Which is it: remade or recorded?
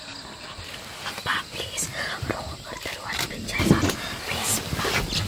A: recorded